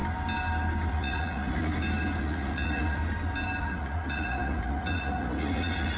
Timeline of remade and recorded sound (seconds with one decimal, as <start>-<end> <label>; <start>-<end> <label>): 0.0-0.9 recorded; 0.9-1.7 remade; 1.7-2.2 recorded; 2.2-3.0 remade; 3.0-3.6 recorded; 3.6-6.0 remade